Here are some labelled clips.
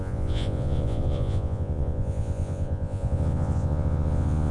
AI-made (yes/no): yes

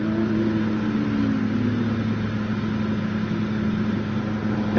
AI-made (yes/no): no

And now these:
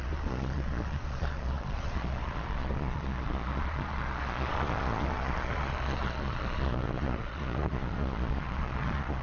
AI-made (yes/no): yes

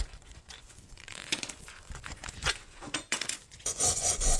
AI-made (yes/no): yes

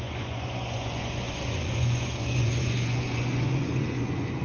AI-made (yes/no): yes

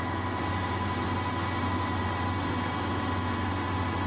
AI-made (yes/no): no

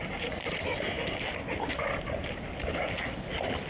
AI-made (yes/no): no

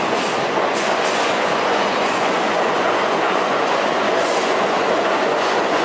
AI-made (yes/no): yes